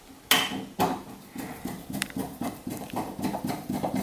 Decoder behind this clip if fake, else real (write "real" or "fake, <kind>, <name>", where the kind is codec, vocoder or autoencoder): real